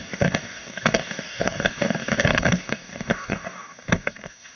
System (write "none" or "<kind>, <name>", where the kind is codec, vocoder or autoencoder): codec, DAC